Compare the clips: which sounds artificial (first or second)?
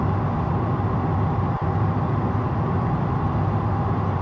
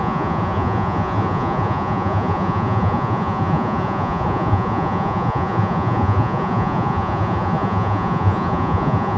second